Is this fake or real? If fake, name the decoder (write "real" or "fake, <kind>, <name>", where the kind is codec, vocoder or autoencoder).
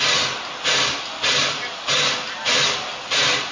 real